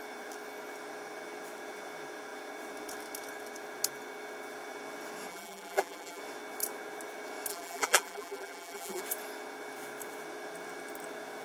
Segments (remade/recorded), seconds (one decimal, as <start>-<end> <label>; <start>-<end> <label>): 0.0-5.3 recorded; 5.3-6.2 remade; 6.2-7.5 recorded; 7.5-9.0 remade; 9.0-11.4 recorded